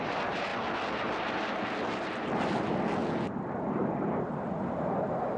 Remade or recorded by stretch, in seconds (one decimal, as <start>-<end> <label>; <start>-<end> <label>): 0.0-0.5 remade; 0.5-3.7 recorded; 3.7-5.4 remade